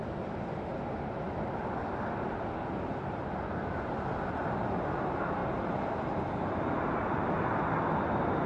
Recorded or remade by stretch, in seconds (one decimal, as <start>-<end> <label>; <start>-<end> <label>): 0.0-5.4 recorded; 5.4-6.2 remade; 6.2-8.5 recorded